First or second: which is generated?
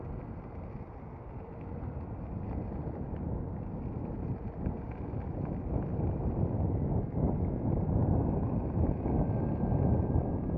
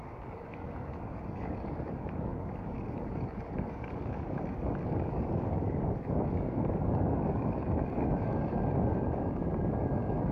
second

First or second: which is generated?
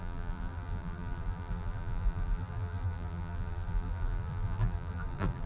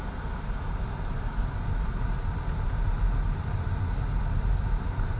first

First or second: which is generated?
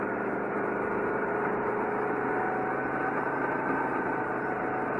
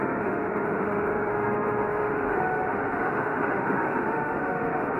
second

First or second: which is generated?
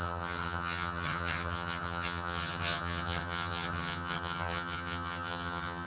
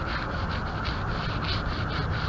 first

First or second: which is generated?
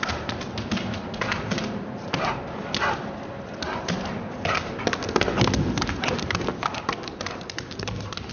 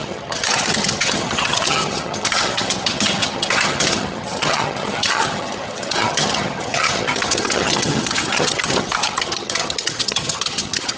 second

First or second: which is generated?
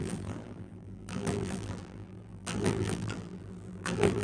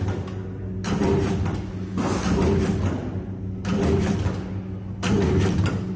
first